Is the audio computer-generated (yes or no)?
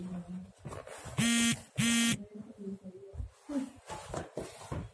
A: no